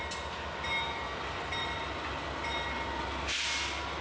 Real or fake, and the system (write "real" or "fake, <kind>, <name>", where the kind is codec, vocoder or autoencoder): real